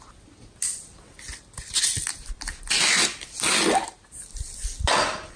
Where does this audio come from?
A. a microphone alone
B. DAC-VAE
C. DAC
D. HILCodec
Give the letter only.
A